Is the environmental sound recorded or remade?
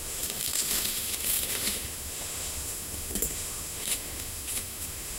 remade